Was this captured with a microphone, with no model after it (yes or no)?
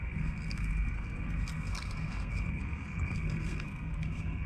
no